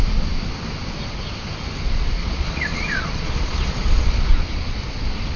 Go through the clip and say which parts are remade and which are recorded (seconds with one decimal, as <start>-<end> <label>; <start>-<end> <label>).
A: 0.0-2.2 recorded; 2.2-4.3 remade; 4.3-5.4 recorded